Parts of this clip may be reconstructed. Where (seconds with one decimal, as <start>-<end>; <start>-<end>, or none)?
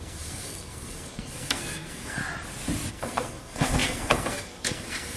0.0-2.2; 2.9-5.2